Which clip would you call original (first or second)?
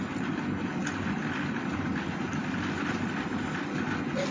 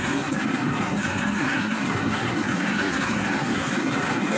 first